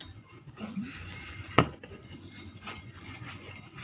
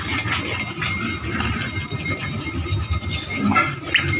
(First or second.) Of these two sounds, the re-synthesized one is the first